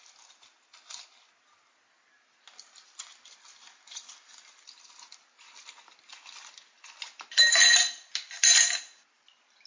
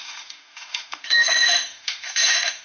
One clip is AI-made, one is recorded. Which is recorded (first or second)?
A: first